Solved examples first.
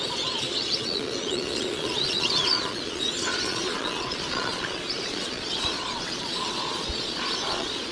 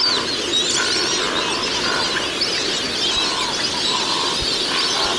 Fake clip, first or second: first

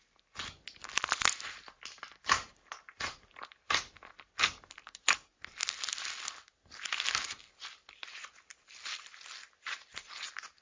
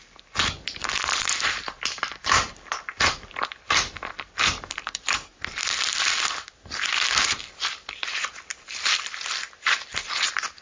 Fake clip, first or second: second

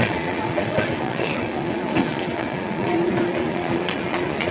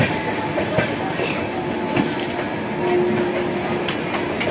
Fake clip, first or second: first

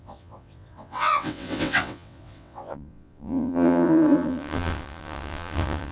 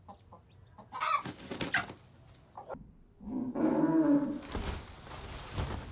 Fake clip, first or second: first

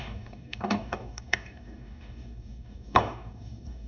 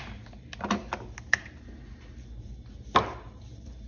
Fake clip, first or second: first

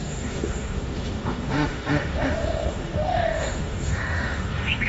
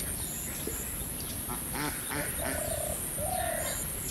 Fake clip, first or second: first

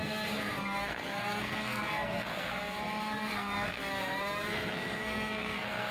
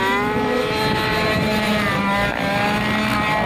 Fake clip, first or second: first